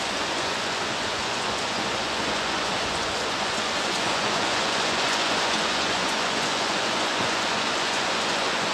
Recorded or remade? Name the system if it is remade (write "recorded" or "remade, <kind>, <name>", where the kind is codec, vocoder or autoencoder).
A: remade, vocoder, Vocos